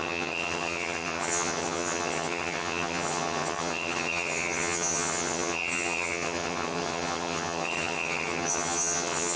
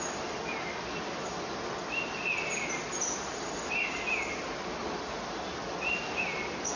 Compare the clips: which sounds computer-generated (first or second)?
first